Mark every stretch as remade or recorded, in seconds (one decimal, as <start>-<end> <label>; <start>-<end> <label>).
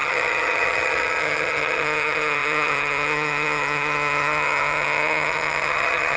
0.0-6.2 remade